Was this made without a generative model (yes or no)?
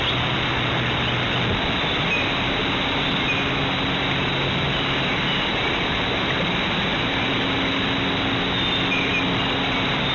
yes